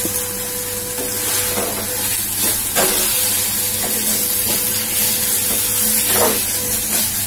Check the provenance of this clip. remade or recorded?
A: recorded